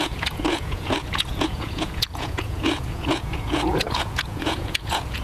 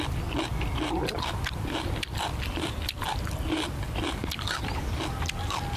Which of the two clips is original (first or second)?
second